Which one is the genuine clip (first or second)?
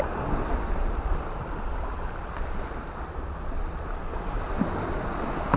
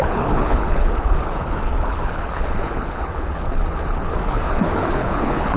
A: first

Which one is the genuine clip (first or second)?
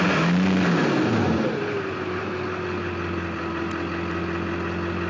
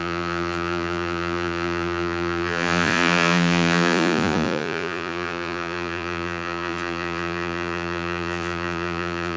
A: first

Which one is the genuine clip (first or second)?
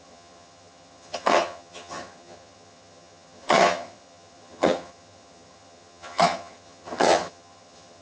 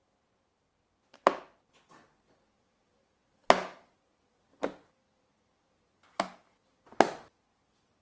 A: second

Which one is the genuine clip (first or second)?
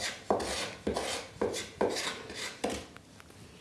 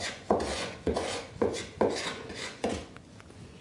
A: first